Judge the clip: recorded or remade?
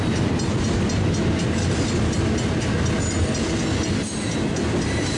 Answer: recorded